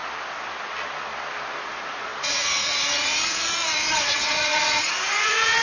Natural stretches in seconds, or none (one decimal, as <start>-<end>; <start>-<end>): 0.0-1.6